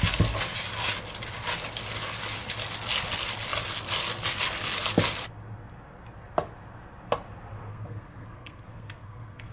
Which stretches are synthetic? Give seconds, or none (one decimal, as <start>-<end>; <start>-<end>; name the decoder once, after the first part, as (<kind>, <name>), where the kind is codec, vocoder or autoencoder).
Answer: 7.7-9.5 (codec, SNAC)